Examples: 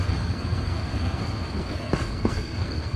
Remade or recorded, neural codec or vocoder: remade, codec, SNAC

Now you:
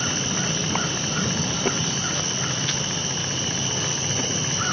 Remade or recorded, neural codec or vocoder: recorded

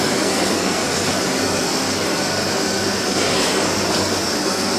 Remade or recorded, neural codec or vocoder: remade, codec, SNAC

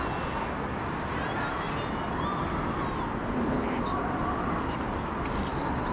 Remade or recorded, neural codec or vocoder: recorded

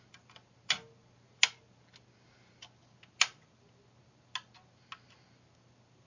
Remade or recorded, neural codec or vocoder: recorded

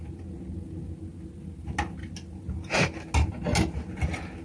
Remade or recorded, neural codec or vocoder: recorded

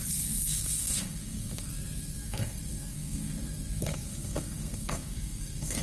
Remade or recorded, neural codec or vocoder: remade, codec, SNAC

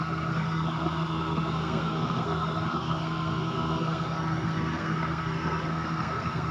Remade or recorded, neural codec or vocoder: remade, codec, SNAC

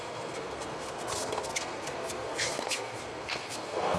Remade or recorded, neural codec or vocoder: remade, codec, SNAC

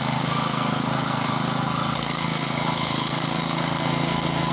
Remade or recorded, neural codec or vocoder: remade, codec, SNAC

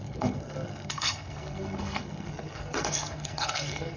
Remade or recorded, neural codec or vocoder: remade, codec, SNAC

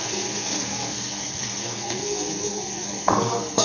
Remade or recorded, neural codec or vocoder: remade, codec, SNAC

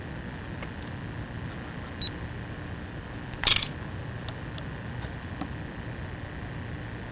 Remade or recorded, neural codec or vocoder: recorded